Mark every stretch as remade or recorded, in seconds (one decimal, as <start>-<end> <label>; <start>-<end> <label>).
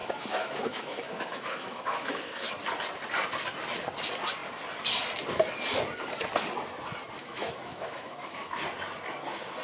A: 0.0-2.5 remade; 2.5-7.2 recorded; 7.2-8.6 remade; 8.6-9.6 recorded